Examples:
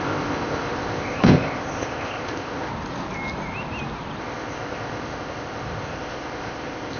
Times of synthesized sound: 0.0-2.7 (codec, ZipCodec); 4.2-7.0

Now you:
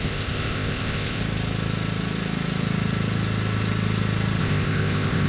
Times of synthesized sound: 0.0-1.2 (codec, ZipCodec); 4.4-5.3

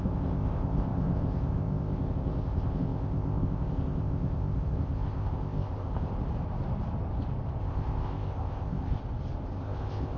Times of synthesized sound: 0.0-6.1 (codec, ZipCodec); 7.6-9.0; 9.6-10.2

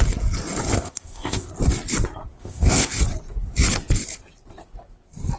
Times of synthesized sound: 0.7-1.5 (codec, ZipCodec); 2.4-3.0